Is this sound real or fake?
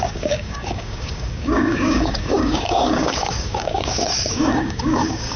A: fake